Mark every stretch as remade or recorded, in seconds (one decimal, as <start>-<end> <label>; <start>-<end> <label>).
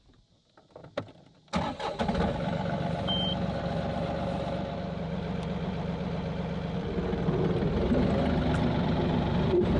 0.0-9.8 recorded